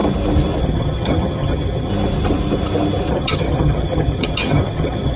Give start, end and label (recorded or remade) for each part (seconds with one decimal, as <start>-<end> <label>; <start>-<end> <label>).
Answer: 0.0-0.6 recorded; 0.6-1.9 remade; 1.9-3.1 recorded; 3.1-5.2 remade